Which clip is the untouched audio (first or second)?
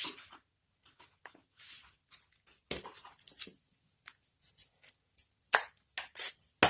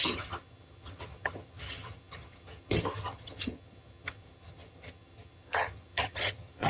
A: first